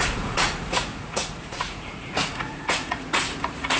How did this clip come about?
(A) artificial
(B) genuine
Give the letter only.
A